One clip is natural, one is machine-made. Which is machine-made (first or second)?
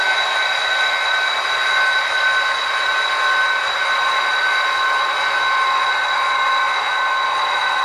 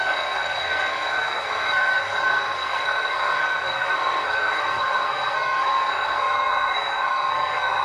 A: second